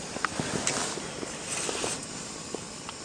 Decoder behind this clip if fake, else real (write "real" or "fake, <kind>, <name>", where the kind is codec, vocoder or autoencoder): real